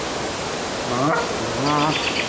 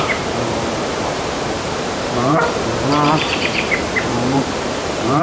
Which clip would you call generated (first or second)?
second